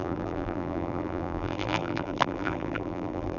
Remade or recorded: remade